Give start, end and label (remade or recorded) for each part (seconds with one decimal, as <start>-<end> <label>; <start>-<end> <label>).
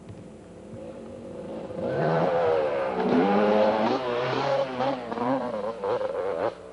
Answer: 0.0-1.5 recorded; 1.5-5.5 remade; 5.5-6.7 recorded